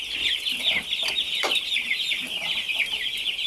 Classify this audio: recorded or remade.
recorded